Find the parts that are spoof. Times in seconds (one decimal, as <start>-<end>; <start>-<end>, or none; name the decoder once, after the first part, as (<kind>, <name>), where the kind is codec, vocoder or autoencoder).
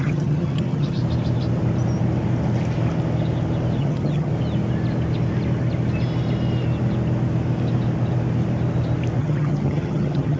0.0-1.0 (vocoder, HiFi-GAN); 3.8-4.3; 9.2-10.4